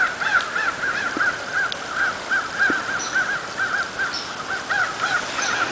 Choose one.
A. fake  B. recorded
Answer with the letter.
B